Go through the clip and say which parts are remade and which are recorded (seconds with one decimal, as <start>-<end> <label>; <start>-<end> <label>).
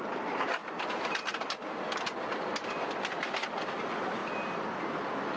0.0-0.6 remade; 0.6-3.0 recorded; 3.0-4.2 remade; 4.2-5.4 recorded